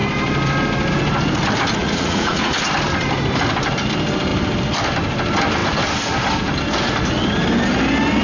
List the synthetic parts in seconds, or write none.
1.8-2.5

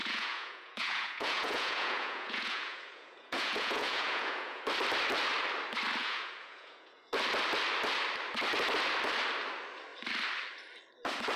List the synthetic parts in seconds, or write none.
0.0-4.6; 6.0-7.1

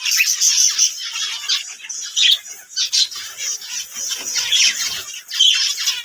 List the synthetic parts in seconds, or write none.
1.9-5.1